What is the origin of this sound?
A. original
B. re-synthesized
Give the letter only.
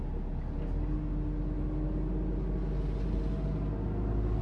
A